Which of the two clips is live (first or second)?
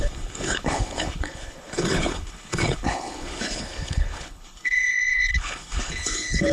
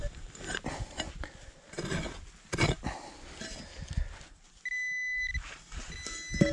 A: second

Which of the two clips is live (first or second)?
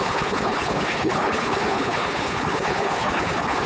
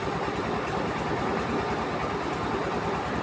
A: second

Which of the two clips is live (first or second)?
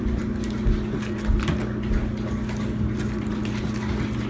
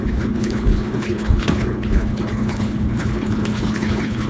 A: first